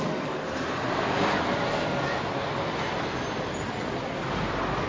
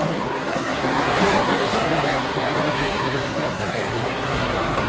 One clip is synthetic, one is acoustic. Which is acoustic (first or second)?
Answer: first